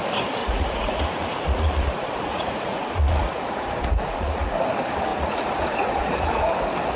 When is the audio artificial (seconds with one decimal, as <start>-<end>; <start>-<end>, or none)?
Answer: 0.4-4.6; 5.1-6.4